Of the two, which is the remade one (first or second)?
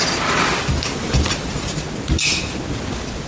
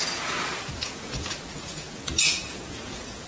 second